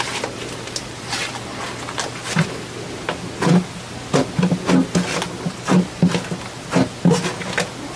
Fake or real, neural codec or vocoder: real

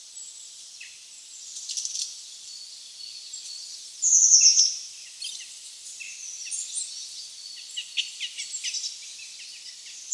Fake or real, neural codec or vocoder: real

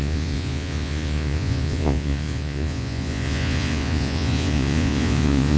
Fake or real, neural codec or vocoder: fake, vocoder, Vocos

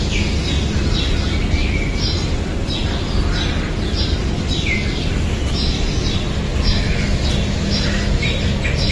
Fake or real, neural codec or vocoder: real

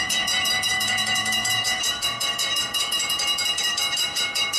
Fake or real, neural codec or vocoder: fake, autoencoder, DAC-VAE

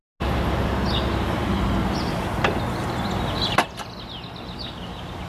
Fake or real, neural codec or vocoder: real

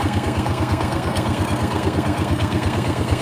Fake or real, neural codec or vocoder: fake, codec, SNAC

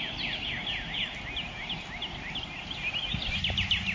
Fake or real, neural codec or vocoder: real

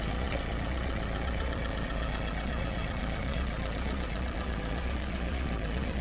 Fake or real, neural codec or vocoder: fake, vocoder, Vocos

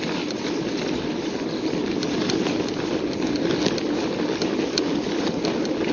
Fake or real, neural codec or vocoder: fake, vocoder, BigVGAN v2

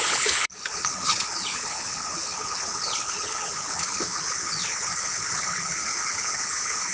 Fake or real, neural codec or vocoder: fake, codec, HILCodec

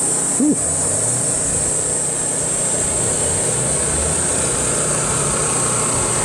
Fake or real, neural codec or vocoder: real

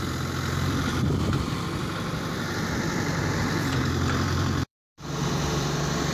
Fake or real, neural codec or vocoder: fake, vocoder, BigVGAN v2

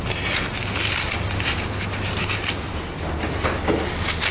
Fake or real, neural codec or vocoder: real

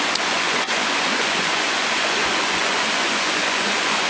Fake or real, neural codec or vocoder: fake, vocoder, Vocos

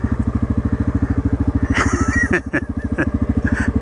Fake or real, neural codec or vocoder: real